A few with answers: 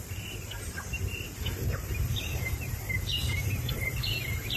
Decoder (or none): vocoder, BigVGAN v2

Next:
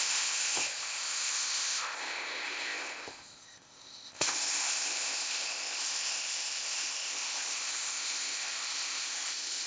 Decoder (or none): codec, ZipCodec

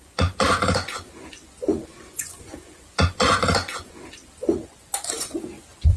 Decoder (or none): vocoder, Vocos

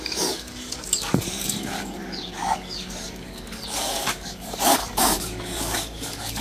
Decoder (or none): codec, DAC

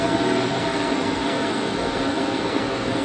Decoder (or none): codec, SNAC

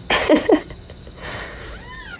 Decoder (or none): none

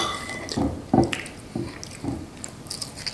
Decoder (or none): none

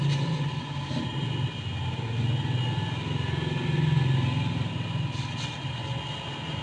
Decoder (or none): none